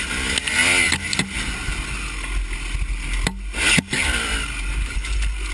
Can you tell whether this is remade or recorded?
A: recorded